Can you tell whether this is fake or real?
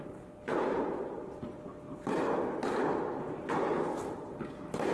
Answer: real